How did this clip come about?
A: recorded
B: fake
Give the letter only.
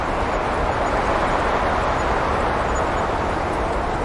A